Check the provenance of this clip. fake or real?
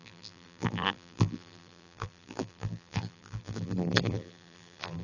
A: fake